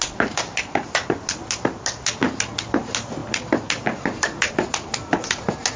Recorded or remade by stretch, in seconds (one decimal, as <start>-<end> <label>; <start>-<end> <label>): 0.0-5.8 recorded